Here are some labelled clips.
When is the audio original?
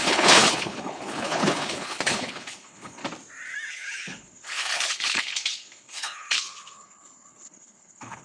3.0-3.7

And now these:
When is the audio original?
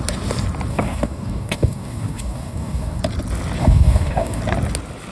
0.0-0.7; 3.0-3.6; 4.4-5.1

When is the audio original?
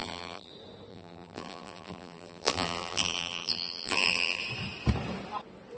0.5-0.9; 4.4-5.8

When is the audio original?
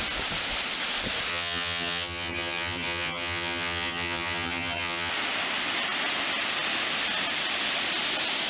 0.0-1.3; 5.1-8.5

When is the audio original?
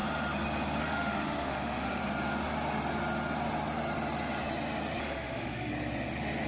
0.0-0.8; 2.0-5.0; 5.7-6.5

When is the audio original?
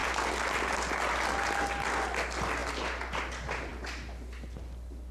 0.0-5.1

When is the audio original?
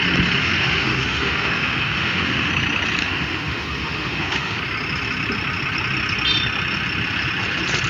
0.0-0.4; 2.5-3.0; 4.6-7.9